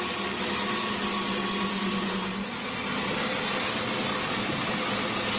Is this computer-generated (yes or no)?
no